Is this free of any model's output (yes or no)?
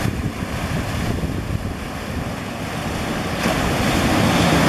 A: yes